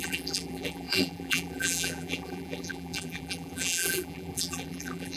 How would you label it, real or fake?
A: fake